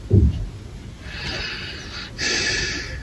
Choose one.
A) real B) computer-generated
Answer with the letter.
A